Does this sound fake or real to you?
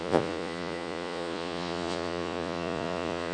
fake